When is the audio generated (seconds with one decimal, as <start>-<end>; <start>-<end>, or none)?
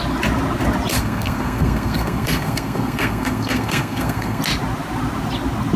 0.9-4.4